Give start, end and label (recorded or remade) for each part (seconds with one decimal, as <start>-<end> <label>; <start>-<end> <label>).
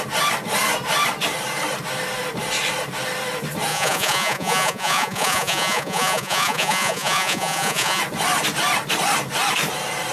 0.0-3.7 recorded; 3.7-8.0 remade; 8.0-10.1 recorded